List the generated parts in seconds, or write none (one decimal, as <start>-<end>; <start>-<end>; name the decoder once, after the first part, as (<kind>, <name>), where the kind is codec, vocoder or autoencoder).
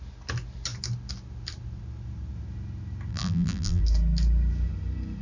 3.1-3.8 (vocoder, BigVGAN v2)